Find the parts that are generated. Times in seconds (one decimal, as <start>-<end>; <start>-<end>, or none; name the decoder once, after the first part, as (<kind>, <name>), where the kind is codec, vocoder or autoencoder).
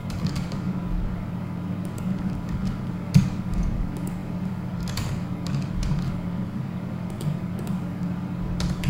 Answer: 0.0-8.9 (codec, DAC)